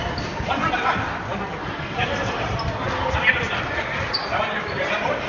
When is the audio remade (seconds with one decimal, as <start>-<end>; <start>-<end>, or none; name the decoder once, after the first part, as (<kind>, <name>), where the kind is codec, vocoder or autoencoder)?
none